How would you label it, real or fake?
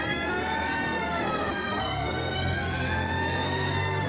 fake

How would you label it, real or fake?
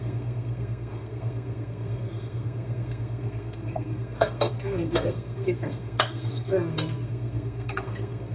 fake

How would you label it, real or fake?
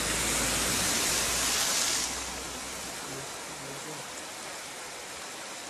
real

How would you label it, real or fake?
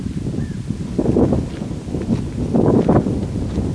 real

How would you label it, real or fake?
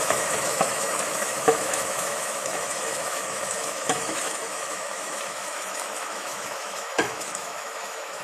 fake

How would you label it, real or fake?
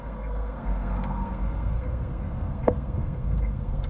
fake